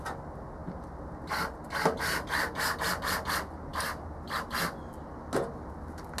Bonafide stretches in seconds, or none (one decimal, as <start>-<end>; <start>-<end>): 0.0-6.2